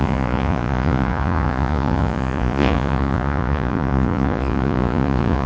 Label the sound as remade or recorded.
remade